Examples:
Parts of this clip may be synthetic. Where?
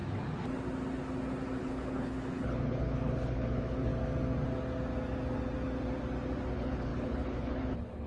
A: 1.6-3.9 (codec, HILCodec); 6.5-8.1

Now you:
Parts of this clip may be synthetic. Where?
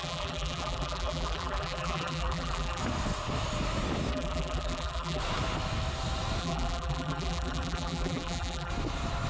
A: 0.0-2.8 (vocoder, BigVGAN v2); 4.1-5.2; 6.4-8.7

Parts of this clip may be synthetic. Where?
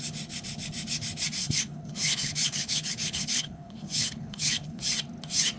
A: 1.4-4.8 (codec, HILCodec)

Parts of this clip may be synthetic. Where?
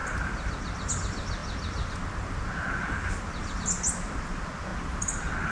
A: 0.0-0.9 (vocoder, BigVGAN v2)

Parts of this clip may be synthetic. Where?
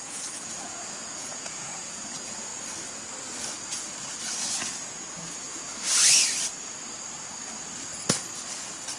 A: 0.0-2.5 (vocoder, Vocos); 4.6-5.7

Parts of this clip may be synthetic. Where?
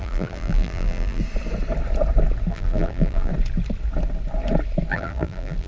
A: 0.0-1.2 (vocoder, BigVGAN v2); 2.5-3.3; 4.9-5.7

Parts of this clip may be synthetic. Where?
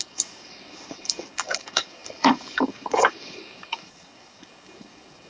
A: 0.0-5.3 (codec, DAC)